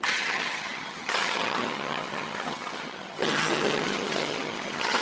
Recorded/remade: remade